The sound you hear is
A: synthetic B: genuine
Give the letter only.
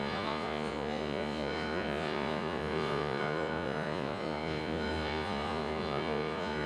A